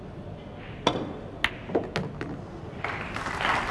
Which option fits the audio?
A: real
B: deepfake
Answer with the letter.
A